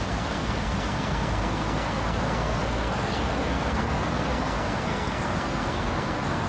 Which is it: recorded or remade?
remade